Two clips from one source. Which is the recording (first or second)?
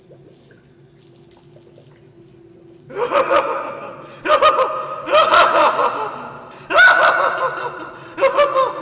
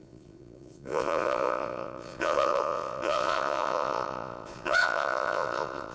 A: first